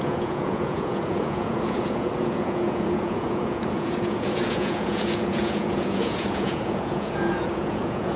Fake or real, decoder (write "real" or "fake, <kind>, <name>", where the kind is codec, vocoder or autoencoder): fake, vocoder, Vocos